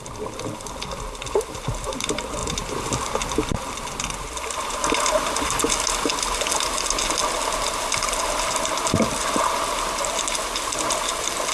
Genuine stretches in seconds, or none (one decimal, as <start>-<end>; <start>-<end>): 0.0-11.5